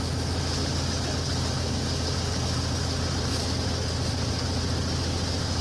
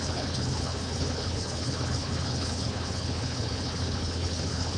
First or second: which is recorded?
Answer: first